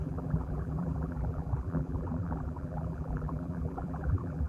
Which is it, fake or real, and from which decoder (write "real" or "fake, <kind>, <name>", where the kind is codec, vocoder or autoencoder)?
fake, vocoder, BigVGAN v2